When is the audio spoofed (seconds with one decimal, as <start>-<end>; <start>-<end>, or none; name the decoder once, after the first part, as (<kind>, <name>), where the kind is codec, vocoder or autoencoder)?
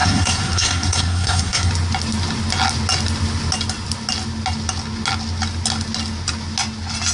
0.0-1.7 (codec, SNAC)